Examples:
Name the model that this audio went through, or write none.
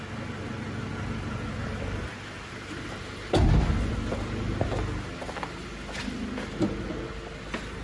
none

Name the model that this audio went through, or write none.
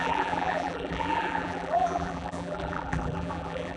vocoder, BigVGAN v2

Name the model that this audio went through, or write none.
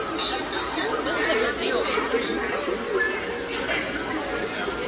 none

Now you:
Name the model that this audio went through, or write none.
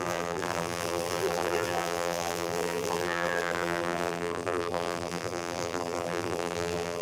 vocoder, BigVGAN v2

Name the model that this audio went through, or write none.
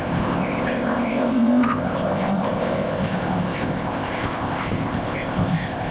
codec, ZipCodec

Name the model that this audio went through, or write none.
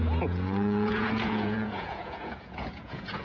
vocoder, Vocos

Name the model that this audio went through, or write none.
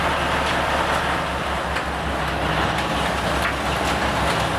none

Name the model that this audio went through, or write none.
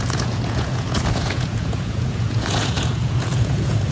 vocoder, Vocos